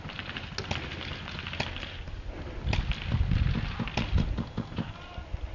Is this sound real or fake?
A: real